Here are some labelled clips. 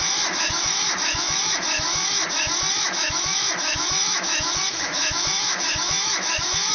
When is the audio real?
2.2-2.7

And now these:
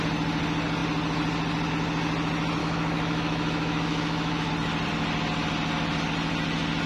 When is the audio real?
0.0-2.6; 4.5-6.9